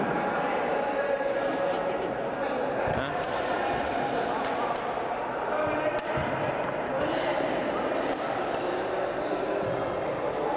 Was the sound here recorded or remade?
recorded